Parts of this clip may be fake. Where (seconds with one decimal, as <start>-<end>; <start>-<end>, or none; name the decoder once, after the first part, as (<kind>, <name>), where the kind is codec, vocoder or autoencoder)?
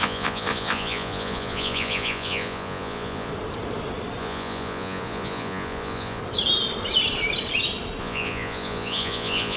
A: 0.0-3.3 (vocoder, Vocos); 4.2-6.2; 8.0-9.6